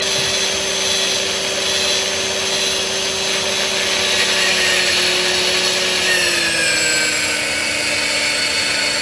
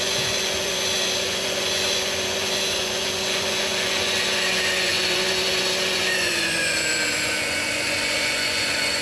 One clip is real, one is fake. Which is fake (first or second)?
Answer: second